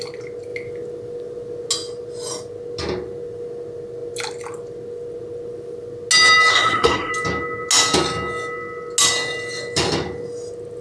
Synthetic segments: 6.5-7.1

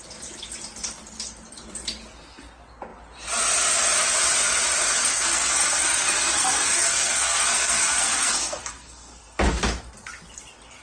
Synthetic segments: 5.0-9.6

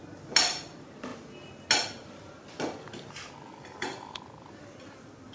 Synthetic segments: none

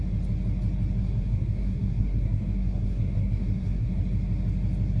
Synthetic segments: 1.0-4.0

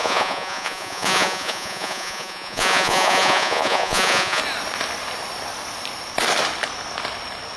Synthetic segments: 0.0-4.4

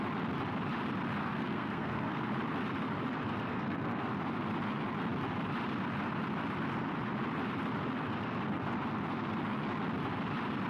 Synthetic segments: 1.2-2.3; 3.5-4.1

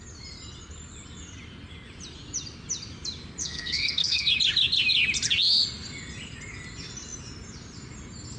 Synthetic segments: 3.4-4.3